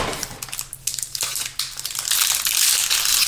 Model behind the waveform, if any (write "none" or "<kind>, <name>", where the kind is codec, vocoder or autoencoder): none